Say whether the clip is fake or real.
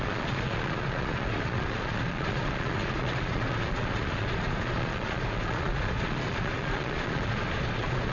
fake